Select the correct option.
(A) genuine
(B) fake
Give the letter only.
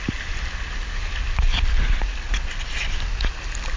A